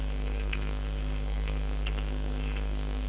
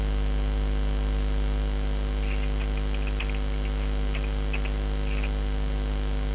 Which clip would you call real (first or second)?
second